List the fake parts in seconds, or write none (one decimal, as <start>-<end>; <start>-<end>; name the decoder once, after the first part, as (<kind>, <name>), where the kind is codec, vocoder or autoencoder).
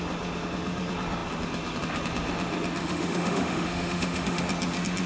2.8-4.4 (autoencoder, DAC-VAE)